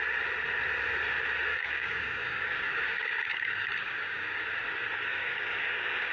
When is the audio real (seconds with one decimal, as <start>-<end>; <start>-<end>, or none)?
0.0-1.5; 4.4-5.1